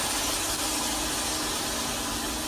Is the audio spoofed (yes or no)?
no